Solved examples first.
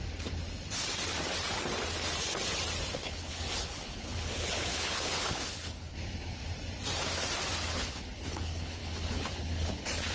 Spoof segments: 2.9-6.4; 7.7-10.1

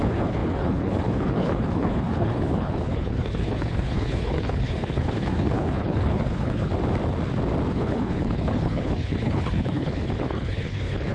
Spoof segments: 0.0-6.7; 7.7-11.1

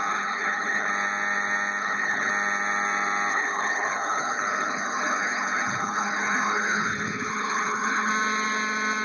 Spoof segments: 0.0-0.9; 1.8-2.3; 3.3-8.1

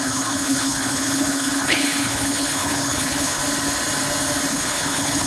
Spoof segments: 0.0-3.4; 4.5-5.3